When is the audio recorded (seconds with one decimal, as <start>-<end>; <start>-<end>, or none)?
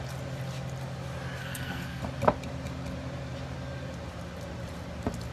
0.0-1.4; 2.0-5.3